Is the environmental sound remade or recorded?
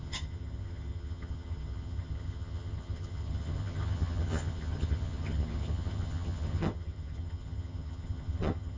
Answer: remade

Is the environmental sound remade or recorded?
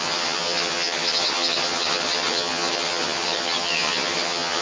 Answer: remade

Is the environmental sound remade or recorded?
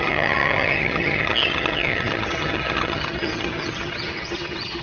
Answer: remade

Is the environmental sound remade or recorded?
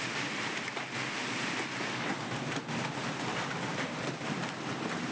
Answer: recorded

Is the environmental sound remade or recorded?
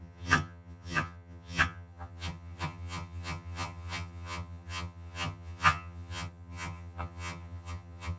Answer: remade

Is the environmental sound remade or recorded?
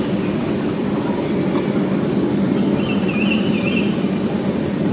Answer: recorded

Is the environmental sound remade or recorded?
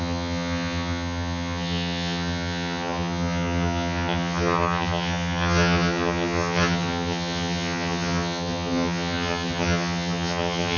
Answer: remade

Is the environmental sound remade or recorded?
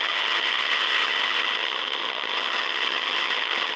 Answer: remade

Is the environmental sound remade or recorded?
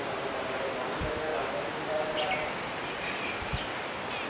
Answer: recorded